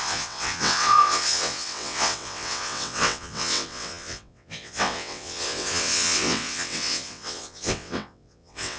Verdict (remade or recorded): remade